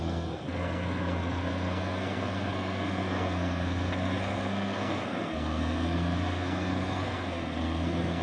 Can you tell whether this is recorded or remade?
remade